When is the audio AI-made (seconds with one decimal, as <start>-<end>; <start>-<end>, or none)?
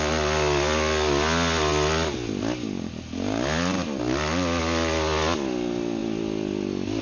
none